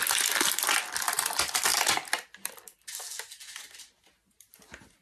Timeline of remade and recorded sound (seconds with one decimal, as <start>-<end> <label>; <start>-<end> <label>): 0.0-5.0 recorded